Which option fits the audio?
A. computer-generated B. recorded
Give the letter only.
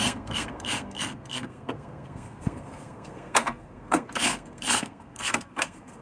A